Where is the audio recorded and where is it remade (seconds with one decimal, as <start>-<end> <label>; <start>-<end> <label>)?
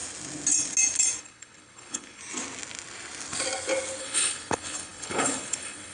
0.0-1.2 recorded; 1.2-2.2 remade; 2.2-4.0 recorded; 4.0-5.9 remade